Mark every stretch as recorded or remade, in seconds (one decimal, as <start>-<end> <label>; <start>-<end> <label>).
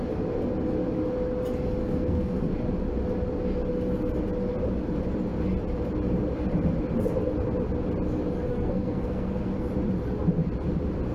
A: 0.0-1.8 recorded; 1.8-2.4 remade; 2.4-8.5 recorded; 8.5-9.7 remade; 9.7-11.1 recorded